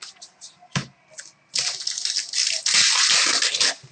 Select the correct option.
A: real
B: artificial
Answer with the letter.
A